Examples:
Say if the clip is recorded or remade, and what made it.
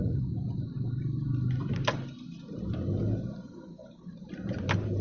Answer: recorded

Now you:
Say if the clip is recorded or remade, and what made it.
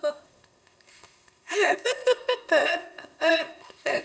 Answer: remade, codec, ZipCodec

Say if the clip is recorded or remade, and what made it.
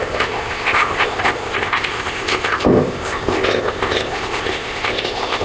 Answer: remade, codec, ZipCodec